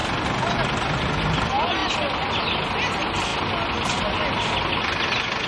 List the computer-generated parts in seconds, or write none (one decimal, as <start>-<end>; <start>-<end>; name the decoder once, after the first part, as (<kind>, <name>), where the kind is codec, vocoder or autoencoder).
none